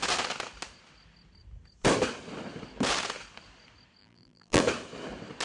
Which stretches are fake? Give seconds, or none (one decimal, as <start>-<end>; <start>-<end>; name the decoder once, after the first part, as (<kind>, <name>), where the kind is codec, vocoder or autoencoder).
4.0-4.6 (vocoder, BigVGAN v2)